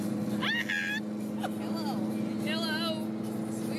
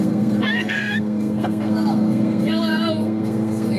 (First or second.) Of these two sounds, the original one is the first